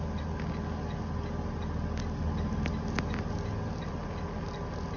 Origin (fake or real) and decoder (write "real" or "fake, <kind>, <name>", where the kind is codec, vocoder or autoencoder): real